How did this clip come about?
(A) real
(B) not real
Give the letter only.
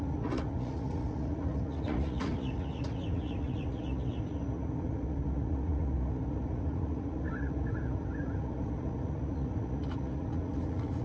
B